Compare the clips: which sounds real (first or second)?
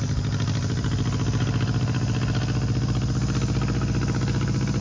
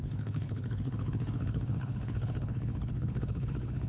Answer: first